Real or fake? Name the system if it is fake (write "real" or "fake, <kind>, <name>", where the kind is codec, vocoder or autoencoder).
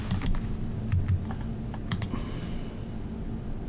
real